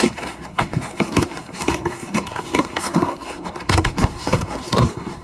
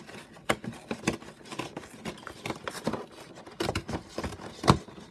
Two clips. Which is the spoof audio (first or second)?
first